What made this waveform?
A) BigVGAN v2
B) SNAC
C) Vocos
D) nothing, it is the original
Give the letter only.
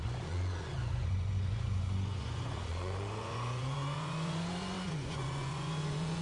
C